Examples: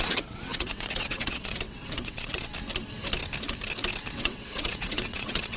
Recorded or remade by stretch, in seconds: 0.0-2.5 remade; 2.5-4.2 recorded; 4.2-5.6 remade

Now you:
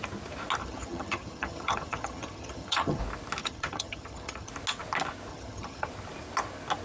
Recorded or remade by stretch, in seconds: 0.0-0.6 recorded; 0.6-3.0 remade; 3.0-3.4 recorded; 3.4-4.5 remade; 4.5-5.3 recorded; 5.3-5.9 remade; 5.9-6.8 recorded

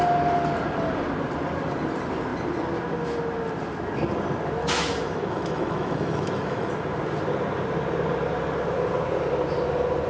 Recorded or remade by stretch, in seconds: 0.0-4.6 recorded; 4.6-6.7 remade; 6.7-10.1 recorded

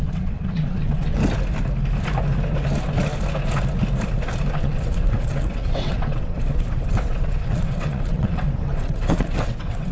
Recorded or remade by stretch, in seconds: 0.0-1.2 remade; 1.2-4.5 recorded; 4.5-9.9 remade

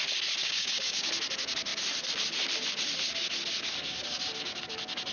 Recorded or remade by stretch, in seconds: 0.0-0.4 recorded; 0.4-1.1 remade; 1.1-5.1 recorded

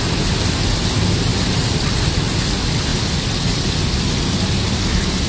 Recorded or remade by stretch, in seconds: 0.0-1.3 recorded; 1.3-2.1 remade; 2.1-2.9 recorded; 2.9-3.8 remade; 3.8-5.3 recorded